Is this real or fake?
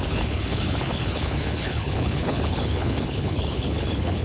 fake